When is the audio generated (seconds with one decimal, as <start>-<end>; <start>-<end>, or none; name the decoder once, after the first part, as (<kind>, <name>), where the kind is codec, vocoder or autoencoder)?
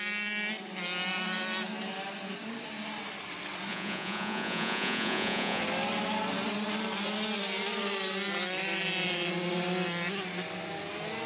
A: 3.7-5.6 (vocoder, Vocos)